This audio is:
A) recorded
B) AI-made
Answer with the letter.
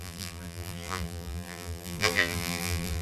B